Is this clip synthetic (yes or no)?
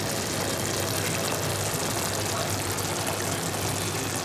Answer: no